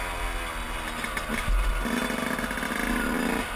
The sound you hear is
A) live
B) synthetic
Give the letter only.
A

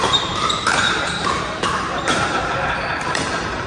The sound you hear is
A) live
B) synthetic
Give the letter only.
B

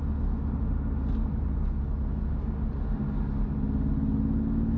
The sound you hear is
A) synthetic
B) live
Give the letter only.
B